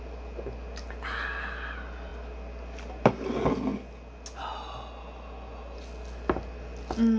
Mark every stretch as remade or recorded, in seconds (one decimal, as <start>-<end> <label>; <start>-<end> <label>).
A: 0.0-7.2 recorded